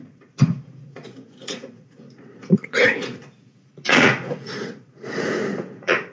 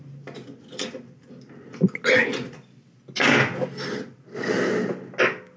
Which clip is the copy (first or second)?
first